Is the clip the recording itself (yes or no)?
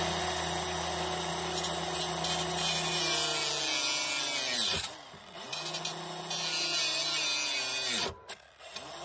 yes